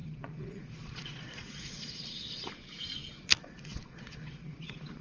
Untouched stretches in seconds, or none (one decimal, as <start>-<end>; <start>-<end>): 2.5-3.4